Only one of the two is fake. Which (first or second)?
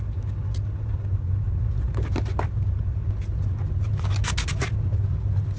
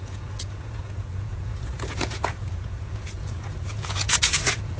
second